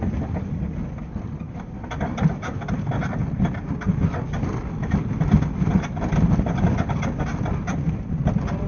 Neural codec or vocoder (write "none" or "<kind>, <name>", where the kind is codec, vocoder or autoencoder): none